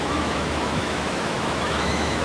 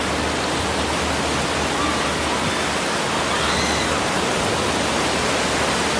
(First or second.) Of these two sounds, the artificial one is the first